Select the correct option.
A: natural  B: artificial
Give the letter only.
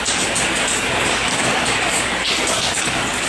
B